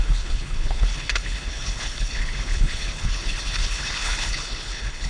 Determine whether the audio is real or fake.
fake